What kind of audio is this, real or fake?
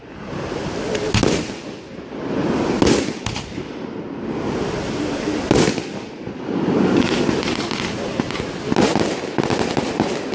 real